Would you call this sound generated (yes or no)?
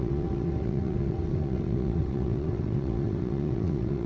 yes